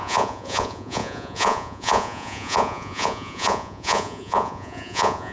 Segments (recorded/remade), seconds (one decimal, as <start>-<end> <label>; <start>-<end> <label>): 0.0-5.3 remade